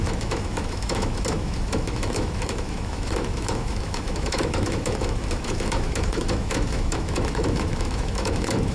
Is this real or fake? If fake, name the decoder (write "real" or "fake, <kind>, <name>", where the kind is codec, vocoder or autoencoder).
fake, autoencoder, DAC-VAE